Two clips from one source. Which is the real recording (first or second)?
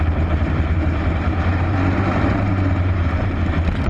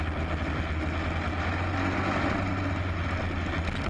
second